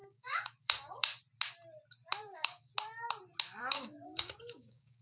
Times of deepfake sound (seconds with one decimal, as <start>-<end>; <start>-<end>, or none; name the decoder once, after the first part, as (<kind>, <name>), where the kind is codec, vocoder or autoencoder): 0.0-1.1 (codec, DAC); 2.2-2.7; 3.6-5.0